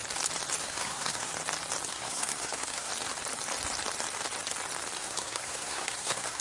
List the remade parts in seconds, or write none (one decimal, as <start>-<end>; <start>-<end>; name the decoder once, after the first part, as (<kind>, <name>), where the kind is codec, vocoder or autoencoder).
0.6-1.3 (codec, SNAC); 1.9-2.9; 5.0-6.4